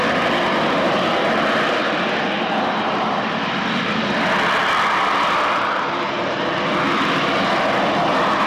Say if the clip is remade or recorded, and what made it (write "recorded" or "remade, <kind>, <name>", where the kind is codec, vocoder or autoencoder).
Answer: recorded